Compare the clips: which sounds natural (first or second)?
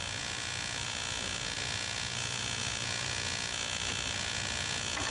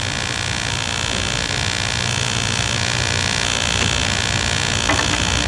second